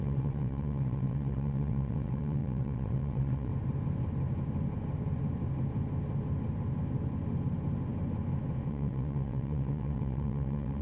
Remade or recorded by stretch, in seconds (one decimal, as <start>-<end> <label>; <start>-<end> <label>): 0.0-3.5 remade; 3.5-8.7 recorded; 8.7-10.8 remade